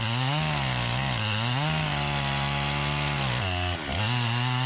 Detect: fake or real real